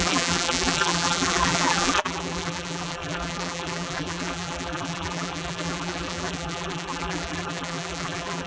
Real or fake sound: fake